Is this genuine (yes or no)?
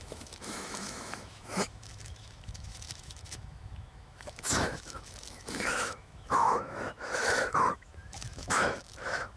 no